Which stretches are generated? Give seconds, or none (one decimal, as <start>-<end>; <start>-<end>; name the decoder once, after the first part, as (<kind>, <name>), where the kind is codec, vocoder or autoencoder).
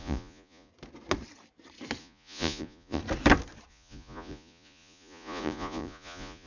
0.0-0.7 (vocoder, Vocos); 2.0-3.0; 3.7-6.5